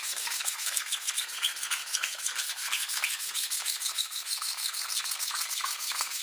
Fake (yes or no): yes